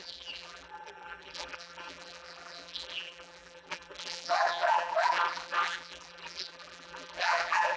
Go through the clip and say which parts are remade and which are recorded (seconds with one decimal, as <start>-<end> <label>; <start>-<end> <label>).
0.0-7.8 remade